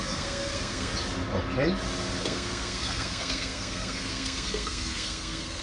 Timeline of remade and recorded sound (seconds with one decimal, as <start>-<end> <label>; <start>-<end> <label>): 0.0-0.9 remade; 0.9-2.2 recorded; 2.2-5.6 remade